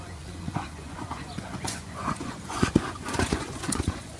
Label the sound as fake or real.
fake